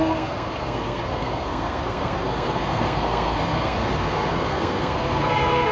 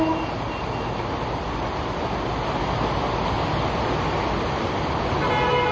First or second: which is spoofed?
first